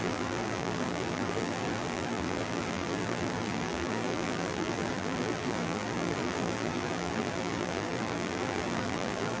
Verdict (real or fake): fake